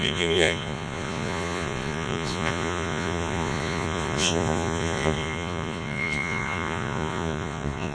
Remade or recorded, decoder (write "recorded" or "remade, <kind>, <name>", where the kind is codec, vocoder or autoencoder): remade, vocoder, Vocos